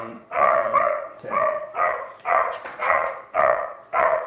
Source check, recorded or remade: remade